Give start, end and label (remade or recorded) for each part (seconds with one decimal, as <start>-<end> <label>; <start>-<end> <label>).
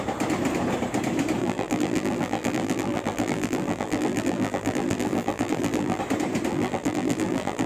0.0-1.4 recorded; 1.4-6.0 remade; 6.0-6.5 recorded; 6.5-7.7 remade